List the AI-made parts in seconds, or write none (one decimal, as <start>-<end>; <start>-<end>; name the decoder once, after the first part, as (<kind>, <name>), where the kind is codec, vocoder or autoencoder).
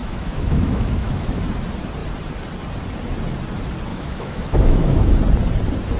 0.0-1.4 (autoencoder, DAC-VAE); 3.9-5.1